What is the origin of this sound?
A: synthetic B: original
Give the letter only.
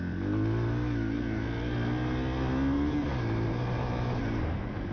B